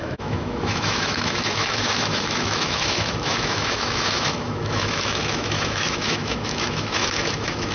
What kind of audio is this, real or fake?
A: fake